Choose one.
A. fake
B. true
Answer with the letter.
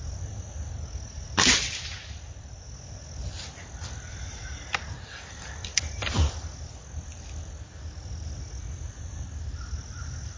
B